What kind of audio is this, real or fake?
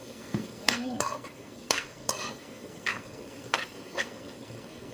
fake